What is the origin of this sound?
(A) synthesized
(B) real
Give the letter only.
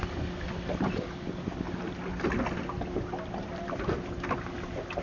B